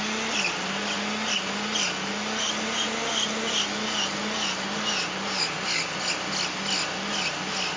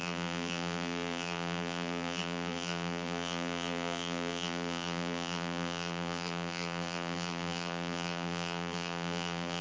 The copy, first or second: second